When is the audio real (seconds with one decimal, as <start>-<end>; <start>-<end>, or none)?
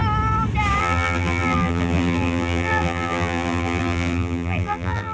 0.0-0.8